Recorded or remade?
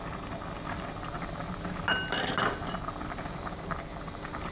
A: recorded